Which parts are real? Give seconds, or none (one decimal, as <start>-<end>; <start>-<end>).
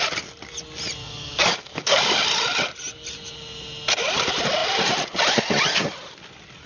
0.0-1.0; 2.2-6.7